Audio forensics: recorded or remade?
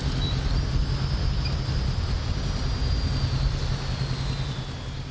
recorded